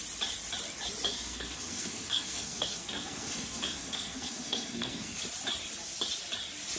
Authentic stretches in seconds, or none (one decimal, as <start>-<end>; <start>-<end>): 0.0-1.1; 5.2-6.8